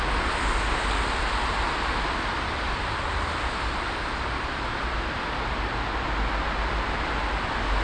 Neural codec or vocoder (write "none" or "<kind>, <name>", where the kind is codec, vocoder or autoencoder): none